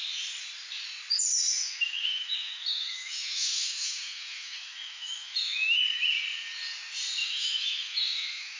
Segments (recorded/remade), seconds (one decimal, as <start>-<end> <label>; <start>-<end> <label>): 0.0-1.6 recorded; 1.6-6.0 remade; 6.0-7.2 recorded; 7.2-8.6 remade